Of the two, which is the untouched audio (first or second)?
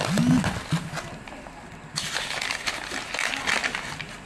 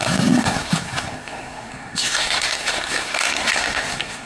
first